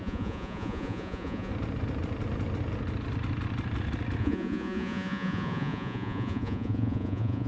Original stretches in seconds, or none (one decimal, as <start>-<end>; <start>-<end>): 1.5-4.2